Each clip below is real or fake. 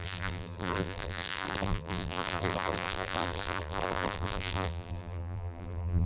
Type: fake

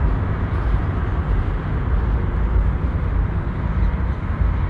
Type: real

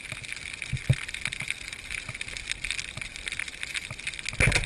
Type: real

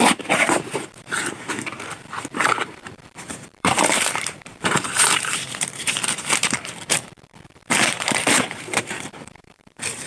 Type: fake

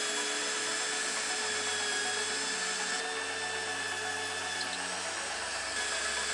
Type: real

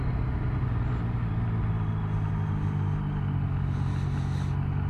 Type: real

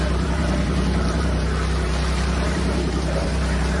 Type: fake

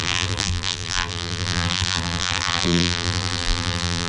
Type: fake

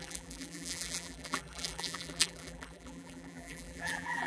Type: fake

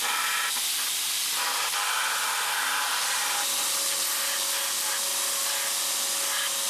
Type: real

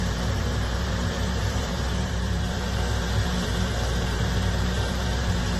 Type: fake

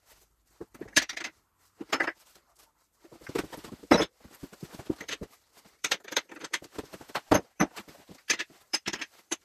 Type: fake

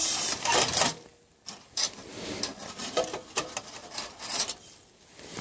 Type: fake